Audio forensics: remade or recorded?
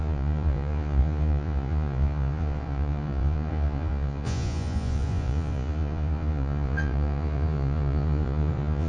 remade